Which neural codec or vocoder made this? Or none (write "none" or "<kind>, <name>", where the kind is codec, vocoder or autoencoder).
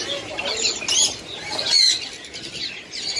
none